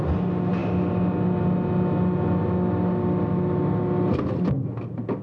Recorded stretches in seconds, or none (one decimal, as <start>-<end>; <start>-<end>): 0.0-5.2